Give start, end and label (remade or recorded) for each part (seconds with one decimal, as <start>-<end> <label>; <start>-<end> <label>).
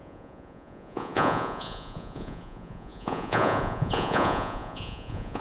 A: 0.0-5.4 remade